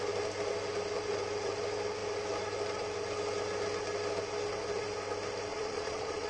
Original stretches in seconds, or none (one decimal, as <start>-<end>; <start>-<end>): 0.0-5.5